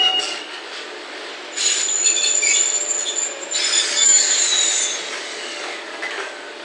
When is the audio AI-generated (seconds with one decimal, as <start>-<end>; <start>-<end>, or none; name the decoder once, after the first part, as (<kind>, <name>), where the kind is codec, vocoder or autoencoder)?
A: 0.0-1.3 (codec, DAC); 3.8-4.4; 5.1-6.6